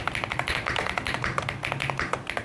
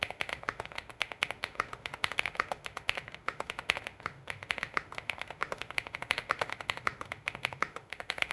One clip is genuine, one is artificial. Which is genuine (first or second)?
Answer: first